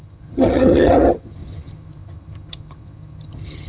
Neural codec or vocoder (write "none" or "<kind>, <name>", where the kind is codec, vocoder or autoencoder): vocoder, HiFi-GAN